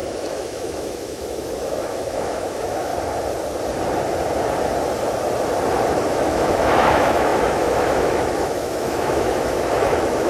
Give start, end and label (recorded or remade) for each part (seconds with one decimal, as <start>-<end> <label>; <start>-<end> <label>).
0.0-2.9 remade; 2.9-5.9 recorded; 5.9-10.3 remade